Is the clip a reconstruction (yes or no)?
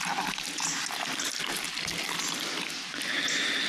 no